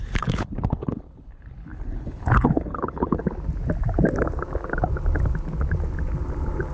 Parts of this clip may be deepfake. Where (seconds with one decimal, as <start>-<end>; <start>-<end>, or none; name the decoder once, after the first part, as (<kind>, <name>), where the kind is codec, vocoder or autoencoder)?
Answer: 0.0-3.2 (codec, HILCodec)